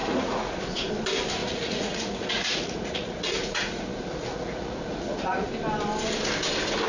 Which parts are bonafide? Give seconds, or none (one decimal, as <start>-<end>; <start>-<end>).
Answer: 0.9-1.4; 5.5-6.9